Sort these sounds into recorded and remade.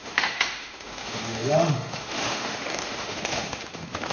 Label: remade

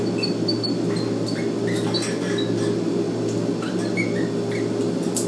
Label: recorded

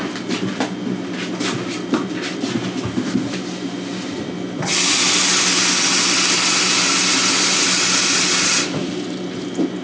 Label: recorded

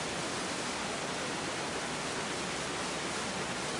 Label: recorded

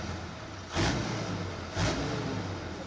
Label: recorded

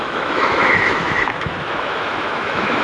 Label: remade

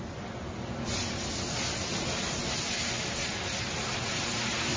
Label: recorded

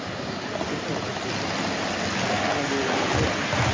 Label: recorded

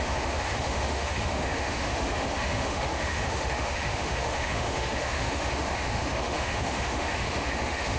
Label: remade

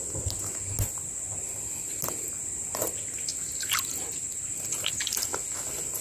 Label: recorded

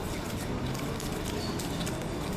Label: recorded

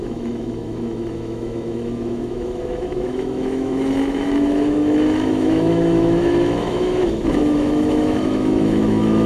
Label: remade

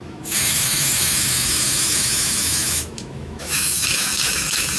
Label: remade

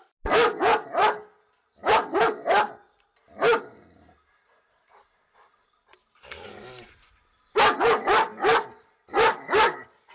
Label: recorded